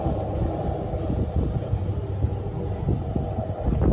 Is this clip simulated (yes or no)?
no